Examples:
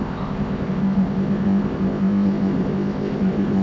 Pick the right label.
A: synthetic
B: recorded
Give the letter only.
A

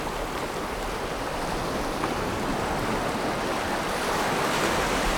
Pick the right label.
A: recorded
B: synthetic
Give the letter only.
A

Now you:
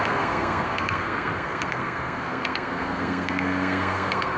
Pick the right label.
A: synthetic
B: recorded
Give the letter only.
A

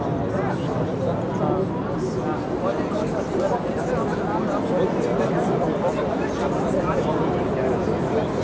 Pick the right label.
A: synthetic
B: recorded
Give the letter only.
B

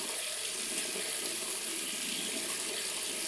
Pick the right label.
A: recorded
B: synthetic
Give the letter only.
A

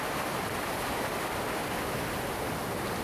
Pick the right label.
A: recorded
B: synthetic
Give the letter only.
A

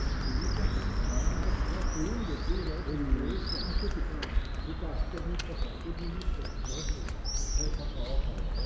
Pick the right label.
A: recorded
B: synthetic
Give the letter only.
A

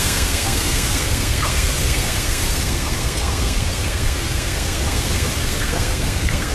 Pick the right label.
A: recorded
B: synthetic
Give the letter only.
B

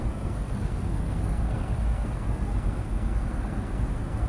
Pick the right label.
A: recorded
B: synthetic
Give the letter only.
B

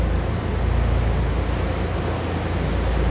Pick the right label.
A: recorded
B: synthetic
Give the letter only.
A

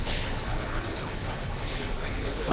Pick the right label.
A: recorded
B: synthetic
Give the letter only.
B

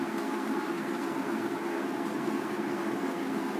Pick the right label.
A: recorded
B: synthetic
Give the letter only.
B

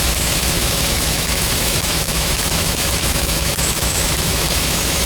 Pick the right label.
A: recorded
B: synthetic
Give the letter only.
B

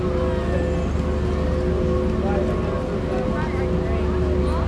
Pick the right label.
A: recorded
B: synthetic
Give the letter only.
A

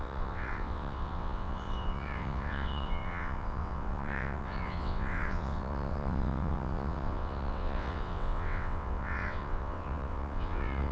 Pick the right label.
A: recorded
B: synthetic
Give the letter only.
B